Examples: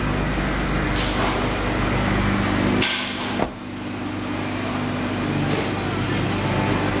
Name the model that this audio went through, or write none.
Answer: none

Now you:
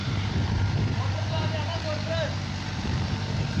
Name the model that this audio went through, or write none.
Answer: vocoder, BigVGAN v2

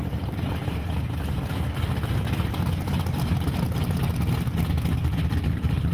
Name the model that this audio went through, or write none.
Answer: none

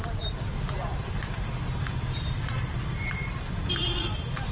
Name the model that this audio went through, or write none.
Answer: vocoder, BigVGAN v2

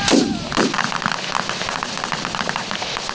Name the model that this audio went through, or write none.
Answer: none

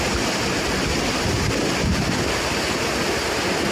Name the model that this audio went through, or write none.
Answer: none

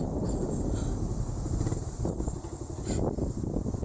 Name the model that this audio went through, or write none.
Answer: none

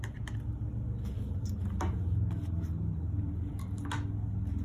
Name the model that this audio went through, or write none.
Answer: none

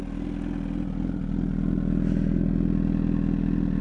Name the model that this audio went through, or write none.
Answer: none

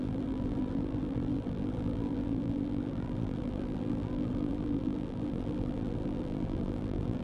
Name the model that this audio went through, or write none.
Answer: vocoder, BigVGAN v2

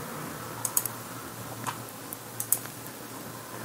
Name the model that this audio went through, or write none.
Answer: none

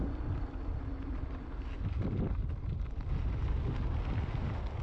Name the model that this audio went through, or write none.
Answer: none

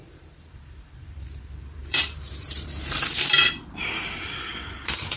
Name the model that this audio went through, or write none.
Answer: vocoder, BigVGAN v2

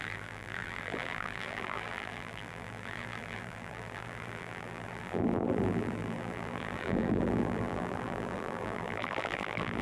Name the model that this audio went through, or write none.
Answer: vocoder, BigVGAN v2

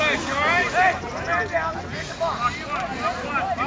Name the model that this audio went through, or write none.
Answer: none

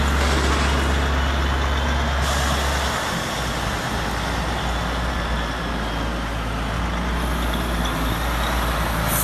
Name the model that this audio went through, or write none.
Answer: none